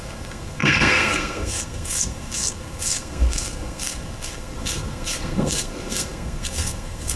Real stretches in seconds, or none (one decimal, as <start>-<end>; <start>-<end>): none